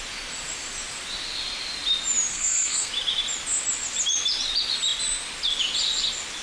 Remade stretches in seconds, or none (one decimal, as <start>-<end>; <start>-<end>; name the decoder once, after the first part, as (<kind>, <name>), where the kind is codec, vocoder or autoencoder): 2.3-2.9 (codec, SNAC)